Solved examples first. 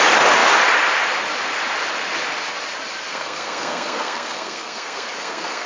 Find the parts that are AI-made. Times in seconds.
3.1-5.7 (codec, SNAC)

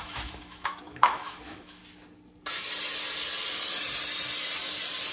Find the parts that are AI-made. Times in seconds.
0.0-1.8 (autoencoder, DAC-VAE)

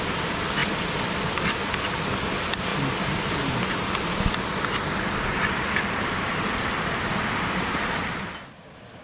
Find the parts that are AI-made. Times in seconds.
none

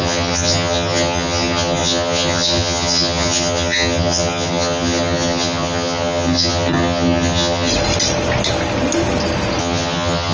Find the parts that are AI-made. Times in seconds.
0.0-7.7 (vocoder, HiFi-GAN); 9.6-10.3

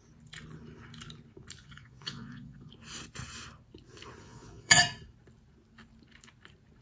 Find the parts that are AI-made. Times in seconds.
1.6-2.7 (vocoder, Vocos); 4.2-4.8

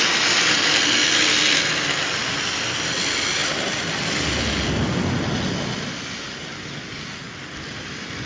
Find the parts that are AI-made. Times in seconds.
none

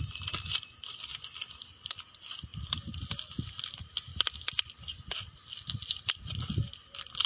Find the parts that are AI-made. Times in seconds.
0.0-2.5 (vocoder, BigVGAN v2); 3.5-4.1; 6.0-7.3